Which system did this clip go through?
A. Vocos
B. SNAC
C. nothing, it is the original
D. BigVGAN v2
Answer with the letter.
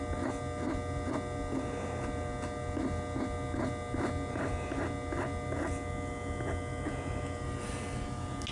C